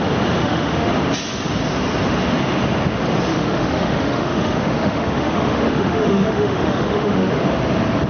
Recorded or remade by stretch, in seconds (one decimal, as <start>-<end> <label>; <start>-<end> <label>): 0.0-0.4 recorded; 0.4-0.9 remade; 0.9-3.3 recorded; 3.3-7.3 remade; 7.3-8.1 recorded